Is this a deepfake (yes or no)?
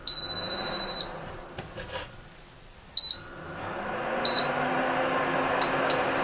no